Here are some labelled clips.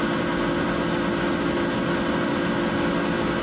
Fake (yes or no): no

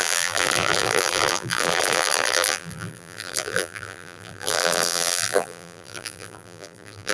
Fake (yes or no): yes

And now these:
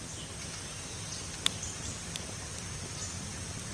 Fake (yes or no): no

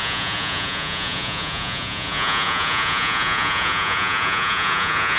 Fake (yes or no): yes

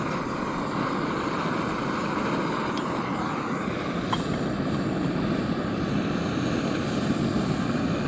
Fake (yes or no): no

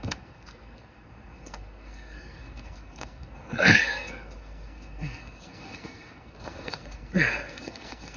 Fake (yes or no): yes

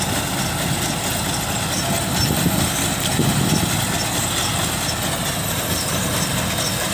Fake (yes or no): no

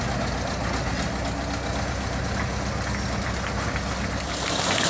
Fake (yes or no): no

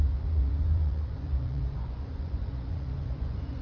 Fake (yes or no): yes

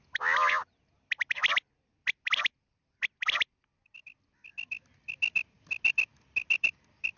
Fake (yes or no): no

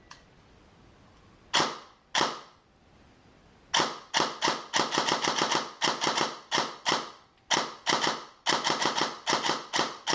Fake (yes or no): no